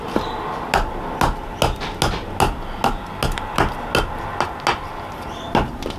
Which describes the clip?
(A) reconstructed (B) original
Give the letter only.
B